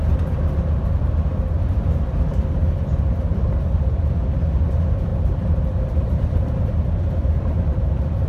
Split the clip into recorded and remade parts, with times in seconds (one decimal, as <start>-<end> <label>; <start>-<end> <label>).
0.0-5.1 recorded; 5.1-8.3 remade